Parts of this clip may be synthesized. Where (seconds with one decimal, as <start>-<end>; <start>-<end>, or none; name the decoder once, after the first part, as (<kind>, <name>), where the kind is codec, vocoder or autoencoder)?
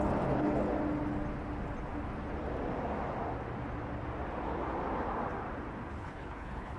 5.9-6.8 (codec, HILCodec)